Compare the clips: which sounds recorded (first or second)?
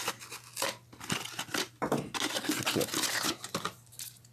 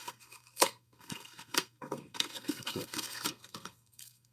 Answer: first